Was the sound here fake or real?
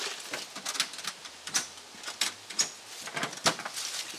real